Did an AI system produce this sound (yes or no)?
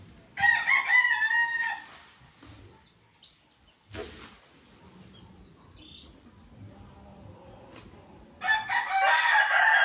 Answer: no